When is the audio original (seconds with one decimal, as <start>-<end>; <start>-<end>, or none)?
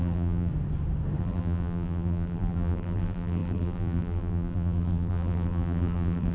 0.5-1.2